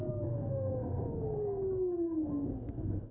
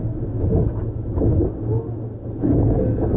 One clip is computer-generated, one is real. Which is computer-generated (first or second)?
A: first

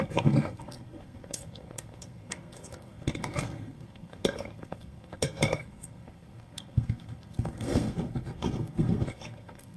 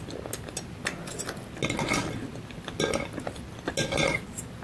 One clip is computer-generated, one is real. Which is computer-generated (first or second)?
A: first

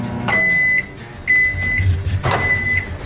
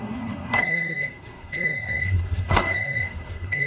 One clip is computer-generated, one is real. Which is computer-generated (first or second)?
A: second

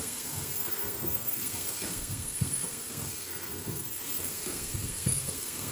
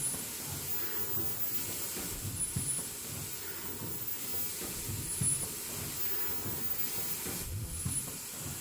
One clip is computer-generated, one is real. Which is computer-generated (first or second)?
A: first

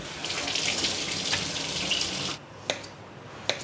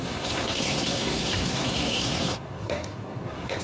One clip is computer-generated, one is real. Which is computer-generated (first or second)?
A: second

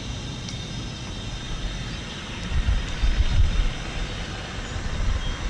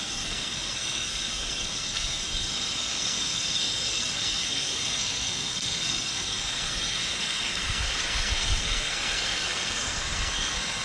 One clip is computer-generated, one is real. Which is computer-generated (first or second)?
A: second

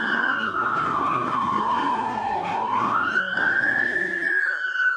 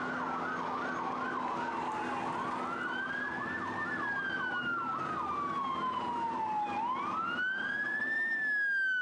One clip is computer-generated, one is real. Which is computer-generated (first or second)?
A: first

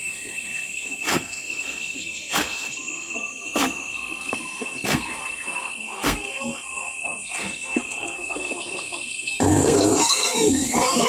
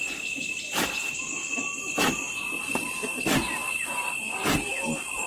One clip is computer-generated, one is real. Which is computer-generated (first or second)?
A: first